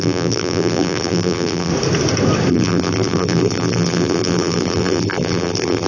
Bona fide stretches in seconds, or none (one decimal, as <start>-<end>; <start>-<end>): 1.7-2.5